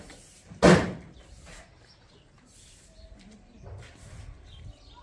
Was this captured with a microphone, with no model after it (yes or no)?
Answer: yes